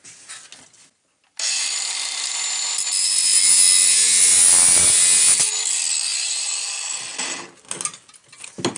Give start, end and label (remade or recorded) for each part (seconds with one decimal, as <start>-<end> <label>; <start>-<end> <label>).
0.0-8.8 recorded